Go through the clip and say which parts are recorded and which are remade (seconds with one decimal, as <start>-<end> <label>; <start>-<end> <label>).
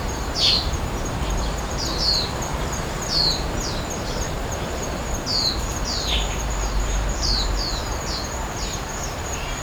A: 0.0-2.5 remade; 2.5-3.2 recorded; 3.2-5.0 remade; 5.0-5.6 recorded; 5.6-7.8 remade; 7.8-8.6 recorded; 8.6-9.6 remade